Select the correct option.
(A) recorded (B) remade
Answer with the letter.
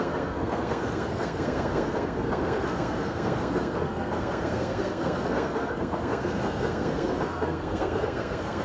B